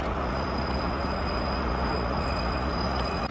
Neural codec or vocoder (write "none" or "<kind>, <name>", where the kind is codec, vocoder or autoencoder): vocoder, Vocos